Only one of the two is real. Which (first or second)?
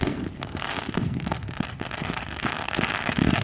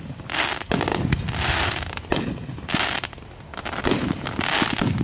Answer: second